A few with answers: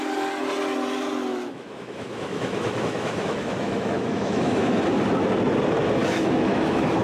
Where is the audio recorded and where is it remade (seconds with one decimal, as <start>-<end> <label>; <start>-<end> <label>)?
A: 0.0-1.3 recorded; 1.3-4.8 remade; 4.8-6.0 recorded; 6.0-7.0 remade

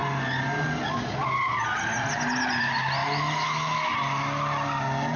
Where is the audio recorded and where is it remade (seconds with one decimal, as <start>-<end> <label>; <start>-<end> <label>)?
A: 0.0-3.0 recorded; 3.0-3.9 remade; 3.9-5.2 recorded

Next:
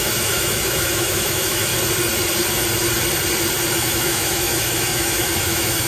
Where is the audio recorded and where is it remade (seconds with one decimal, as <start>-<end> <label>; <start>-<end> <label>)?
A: 0.0-1.7 remade; 1.7-3.7 recorded; 3.7-5.9 remade

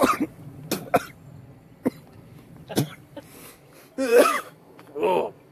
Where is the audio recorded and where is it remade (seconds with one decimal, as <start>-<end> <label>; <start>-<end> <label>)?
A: 0.0-4.1 recorded; 4.1-4.8 remade; 4.8-5.5 recorded